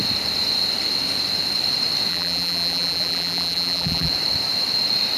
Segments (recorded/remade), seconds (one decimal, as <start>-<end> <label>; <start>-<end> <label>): 0.0-2.1 recorded; 2.1-4.1 remade; 4.1-5.2 recorded